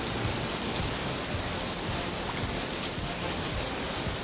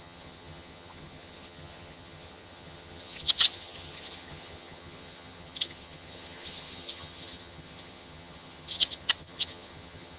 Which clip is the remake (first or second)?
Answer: second